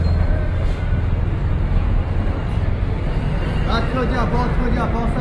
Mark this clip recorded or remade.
recorded